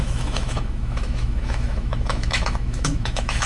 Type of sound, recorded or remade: remade